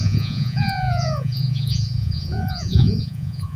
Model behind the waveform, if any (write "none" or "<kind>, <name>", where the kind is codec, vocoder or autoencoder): vocoder, Vocos